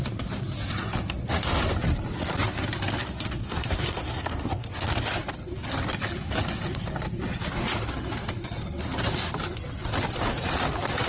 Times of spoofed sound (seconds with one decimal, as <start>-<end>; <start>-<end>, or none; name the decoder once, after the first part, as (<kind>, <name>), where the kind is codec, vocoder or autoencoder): 3.4-4.7 (codec, SNAC)